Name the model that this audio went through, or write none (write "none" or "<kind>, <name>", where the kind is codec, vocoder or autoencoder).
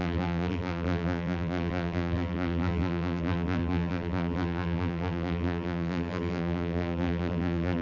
vocoder, BigVGAN v2